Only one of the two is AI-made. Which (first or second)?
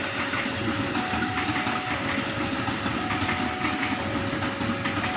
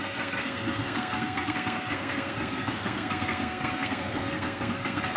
second